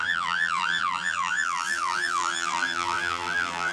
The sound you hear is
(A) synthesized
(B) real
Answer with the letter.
A